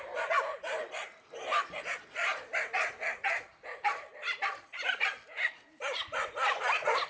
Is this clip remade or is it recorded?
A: recorded